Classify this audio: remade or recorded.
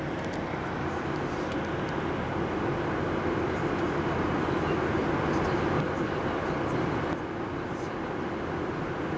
recorded